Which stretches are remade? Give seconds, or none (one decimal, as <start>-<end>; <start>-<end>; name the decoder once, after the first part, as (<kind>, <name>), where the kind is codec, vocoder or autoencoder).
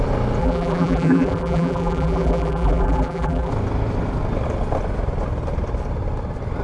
0.4-3.5 (vocoder, BigVGAN v2)